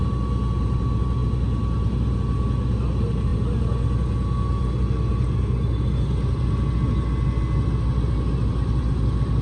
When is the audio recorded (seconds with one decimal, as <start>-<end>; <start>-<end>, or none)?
0.0-9.4